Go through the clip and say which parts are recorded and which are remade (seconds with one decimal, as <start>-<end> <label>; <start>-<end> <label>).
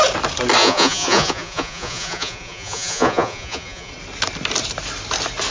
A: 0.0-0.6 recorded; 0.6-3.9 remade; 3.9-5.5 recorded